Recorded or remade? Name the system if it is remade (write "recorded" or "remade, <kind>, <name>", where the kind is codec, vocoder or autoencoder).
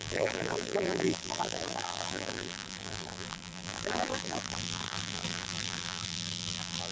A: remade, vocoder, BigVGAN v2